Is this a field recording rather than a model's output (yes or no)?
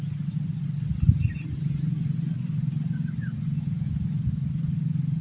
yes